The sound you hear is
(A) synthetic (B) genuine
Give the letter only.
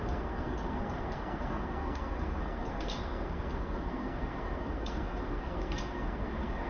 A